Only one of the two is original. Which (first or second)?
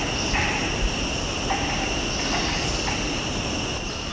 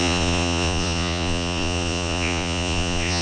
first